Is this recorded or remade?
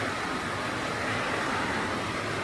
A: recorded